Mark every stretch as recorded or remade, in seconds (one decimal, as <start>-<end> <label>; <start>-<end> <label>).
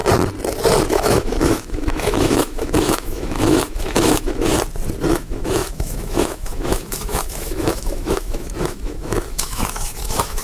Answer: 0.0-0.9 recorded; 0.9-4.5 remade; 4.5-5.1 recorded; 5.1-10.4 remade